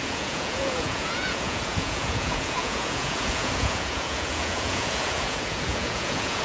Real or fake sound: fake